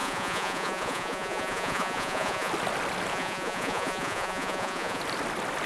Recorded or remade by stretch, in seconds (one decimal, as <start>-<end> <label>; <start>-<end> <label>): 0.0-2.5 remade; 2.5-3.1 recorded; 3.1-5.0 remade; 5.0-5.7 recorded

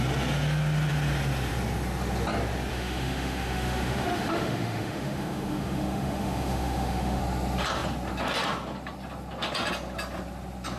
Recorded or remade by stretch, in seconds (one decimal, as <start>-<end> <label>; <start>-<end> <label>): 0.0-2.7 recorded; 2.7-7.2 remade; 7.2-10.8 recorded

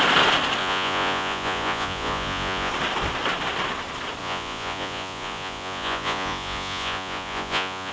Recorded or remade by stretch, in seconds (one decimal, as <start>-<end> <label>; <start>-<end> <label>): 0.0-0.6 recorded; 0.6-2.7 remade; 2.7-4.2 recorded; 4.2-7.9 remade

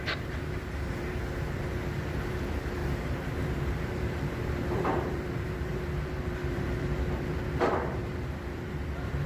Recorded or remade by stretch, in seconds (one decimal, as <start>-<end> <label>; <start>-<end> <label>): 0.0-9.3 remade

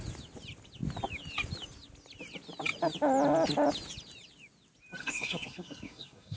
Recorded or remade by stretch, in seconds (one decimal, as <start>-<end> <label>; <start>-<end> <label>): 0.0-5.0 recorded; 5.0-6.4 remade

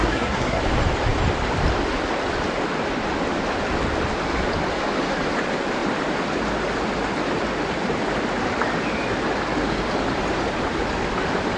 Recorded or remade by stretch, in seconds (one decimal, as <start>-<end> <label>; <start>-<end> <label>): 0.0-0.6 remade; 0.6-11.6 recorded

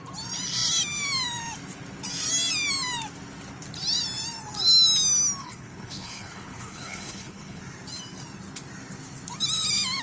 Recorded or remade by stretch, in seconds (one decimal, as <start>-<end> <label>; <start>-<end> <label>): 0.0-5.4 recorded; 5.4-7.6 remade; 7.6-10.0 recorded

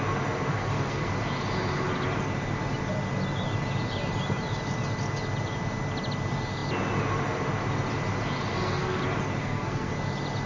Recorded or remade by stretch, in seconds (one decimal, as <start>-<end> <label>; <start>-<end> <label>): 0.0-0.5 recorded; 0.5-1.1 remade; 1.1-8.5 recorded; 8.5-9.0 remade; 9.0-9.4 recorded; 9.4-9.9 remade; 9.9-10.5 recorded